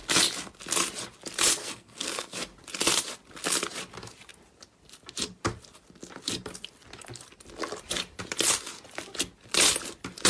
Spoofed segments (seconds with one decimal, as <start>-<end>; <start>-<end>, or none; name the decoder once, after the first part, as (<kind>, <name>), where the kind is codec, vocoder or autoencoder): 1.6-2.4 (codec, SNAC)